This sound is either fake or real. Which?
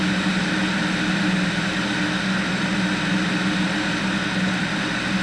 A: real